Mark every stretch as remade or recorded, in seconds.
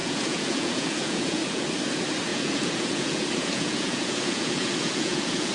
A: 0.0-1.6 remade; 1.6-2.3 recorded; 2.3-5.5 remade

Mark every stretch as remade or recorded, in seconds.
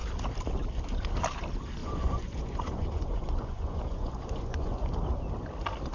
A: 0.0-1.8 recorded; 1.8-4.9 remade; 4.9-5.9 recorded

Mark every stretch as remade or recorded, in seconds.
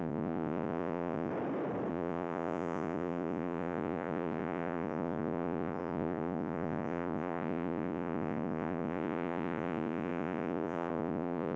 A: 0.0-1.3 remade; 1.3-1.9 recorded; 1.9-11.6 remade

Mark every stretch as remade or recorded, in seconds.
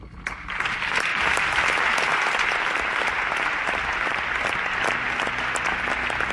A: 0.0-6.3 recorded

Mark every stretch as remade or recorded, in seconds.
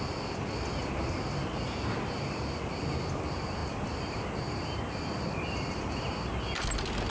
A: 0.0-7.1 recorded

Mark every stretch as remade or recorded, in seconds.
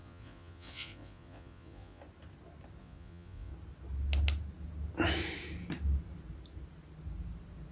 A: 0.0-2.0 remade; 2.0-2.8 recorded; 2.8-3.5 remade; 3.5-7.7 recorded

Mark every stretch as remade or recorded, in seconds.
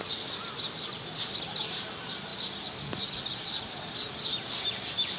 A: 0.0-5.2 recorded